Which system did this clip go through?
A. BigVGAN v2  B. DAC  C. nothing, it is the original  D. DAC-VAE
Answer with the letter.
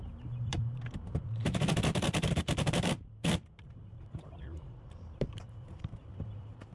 A